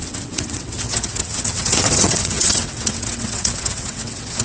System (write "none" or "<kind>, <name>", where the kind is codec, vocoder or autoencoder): vocoder, WaveNeXt